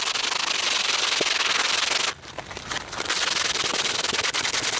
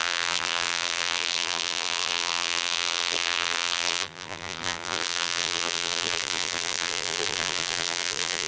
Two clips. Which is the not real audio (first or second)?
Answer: second